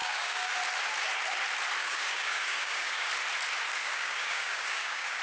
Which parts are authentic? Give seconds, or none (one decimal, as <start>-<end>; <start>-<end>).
0.5-1.8; 3.1-3.8